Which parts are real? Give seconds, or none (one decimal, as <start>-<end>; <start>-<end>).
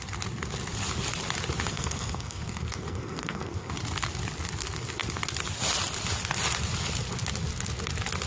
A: 0.0-1.7; 3.7-8.3